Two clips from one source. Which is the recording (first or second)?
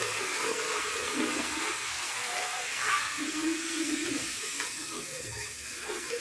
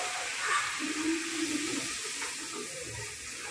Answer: second